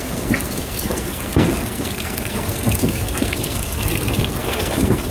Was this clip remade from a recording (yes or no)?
yes